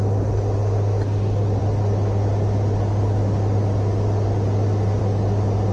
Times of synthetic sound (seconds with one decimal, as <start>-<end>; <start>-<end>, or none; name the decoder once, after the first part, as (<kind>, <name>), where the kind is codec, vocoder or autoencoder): none